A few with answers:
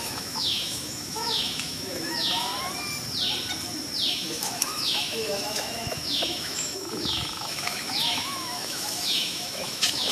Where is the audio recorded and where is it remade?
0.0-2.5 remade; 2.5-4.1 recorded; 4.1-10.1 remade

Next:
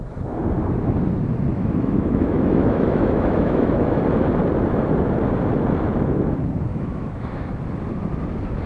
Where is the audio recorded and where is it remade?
0.0-1.5 recorded; 1.5-4.0 remade; 4.0-6.7 recorded; 6.7-7.5 remade; 7.5-8.7 recorded

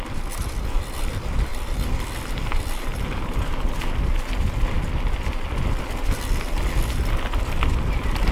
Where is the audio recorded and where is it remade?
0.0-8.3 recorded

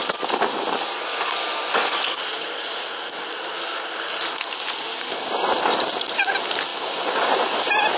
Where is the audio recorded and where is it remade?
0.0-8.0 recorded

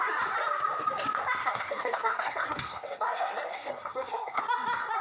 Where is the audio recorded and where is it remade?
0.0-1.4 recorded; 1.4-4.4 remade; 4.4-5.0 recorded

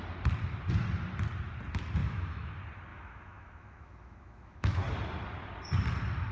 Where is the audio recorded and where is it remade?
0.0-2.0 recorded; 2.0-2.5 remade; 2.5-2.9 recorded; 2.9-4.8 remade; 4.8-6.3 recorded

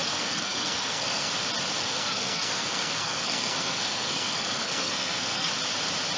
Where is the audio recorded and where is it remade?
0.0-1.3 remade; 1.3-1.8 recorded; 1.8-5.5 remade; 5.5-6.2 recorded